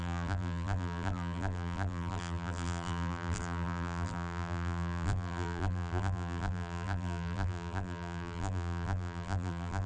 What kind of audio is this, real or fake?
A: fake